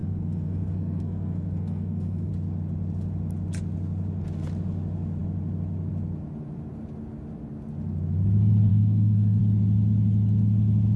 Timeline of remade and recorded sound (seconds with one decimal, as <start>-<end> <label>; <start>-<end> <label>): 0.0-2.3 remade; 2.3-8.7 recorded; 8.7-9.4 remade; 9.4-11.0 recorded